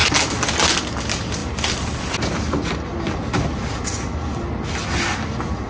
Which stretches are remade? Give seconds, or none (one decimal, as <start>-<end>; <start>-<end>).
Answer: none